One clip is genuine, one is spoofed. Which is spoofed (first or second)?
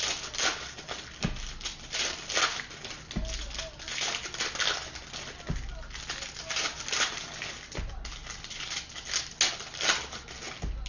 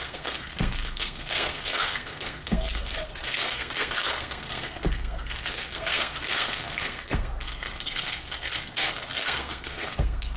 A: second